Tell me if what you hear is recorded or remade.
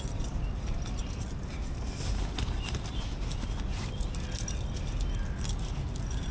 recorded